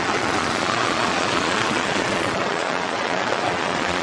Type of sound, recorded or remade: remade